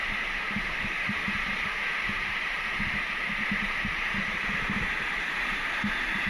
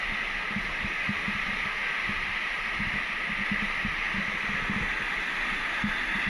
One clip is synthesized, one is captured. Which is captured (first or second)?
second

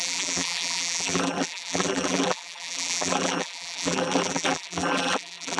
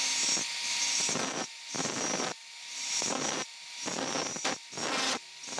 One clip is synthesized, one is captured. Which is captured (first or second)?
second